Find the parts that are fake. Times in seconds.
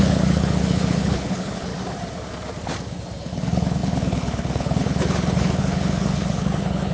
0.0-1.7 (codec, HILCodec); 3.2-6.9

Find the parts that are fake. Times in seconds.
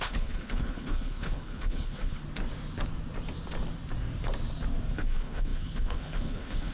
0.0-2.2 (codec, HILCodec); 4.9-6.7